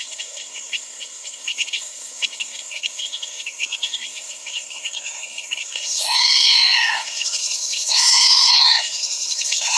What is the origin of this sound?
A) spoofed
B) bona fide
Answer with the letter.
A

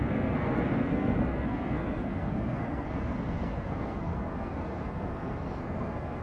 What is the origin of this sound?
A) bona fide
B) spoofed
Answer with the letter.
B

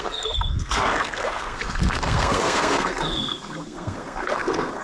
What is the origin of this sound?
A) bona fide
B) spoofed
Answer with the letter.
B